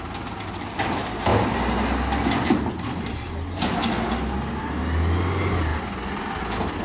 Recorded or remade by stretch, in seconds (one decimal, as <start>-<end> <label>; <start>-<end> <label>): 0.0-6.8 recorded